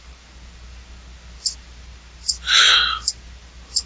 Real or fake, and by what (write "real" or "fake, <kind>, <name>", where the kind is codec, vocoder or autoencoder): real